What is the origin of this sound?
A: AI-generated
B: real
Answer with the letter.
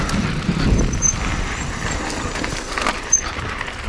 B